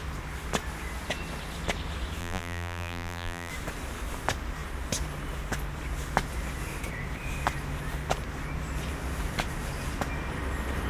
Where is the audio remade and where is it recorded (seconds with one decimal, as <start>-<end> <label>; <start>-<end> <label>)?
0.0-2.2 recorded; 2.2-3.5 remade; 3.5-10.9 recorded